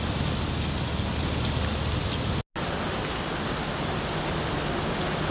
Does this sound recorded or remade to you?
recorded